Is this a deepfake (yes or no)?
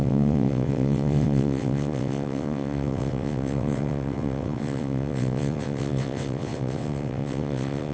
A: yes